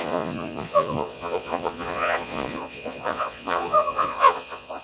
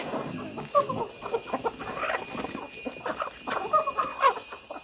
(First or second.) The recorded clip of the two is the second